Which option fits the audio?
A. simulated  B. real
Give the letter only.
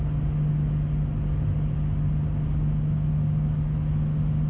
B